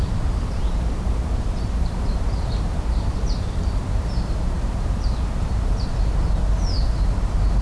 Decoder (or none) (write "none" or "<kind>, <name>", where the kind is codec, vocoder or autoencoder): vocoder, BigVGAN v2